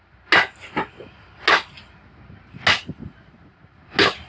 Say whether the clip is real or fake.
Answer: real